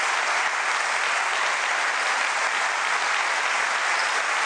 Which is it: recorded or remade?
recorded